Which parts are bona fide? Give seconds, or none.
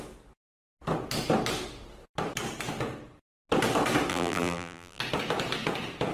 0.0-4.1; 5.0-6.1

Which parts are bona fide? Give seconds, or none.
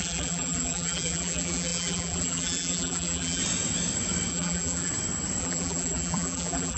3.4-4.3; 4.9-5.4